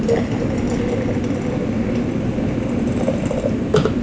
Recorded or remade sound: recorded